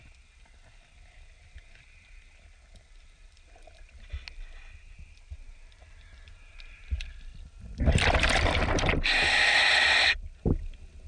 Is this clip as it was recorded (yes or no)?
yes